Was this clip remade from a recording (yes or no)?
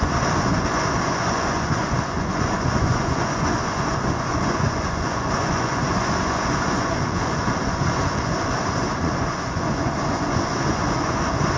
yes